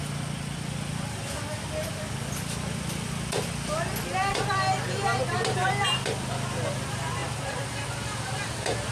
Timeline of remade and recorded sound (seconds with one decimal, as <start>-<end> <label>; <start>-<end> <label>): 0.0-8.9 recorded